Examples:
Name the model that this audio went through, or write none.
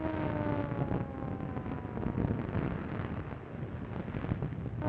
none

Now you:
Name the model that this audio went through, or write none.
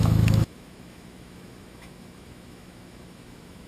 autoencoder, DAC-VAE